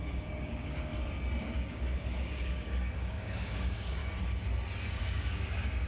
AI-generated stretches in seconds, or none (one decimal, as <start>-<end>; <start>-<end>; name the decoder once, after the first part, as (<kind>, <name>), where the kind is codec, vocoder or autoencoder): 0.0-0.9 (codec, DAC); 1.4-4.0; 5.0-5.9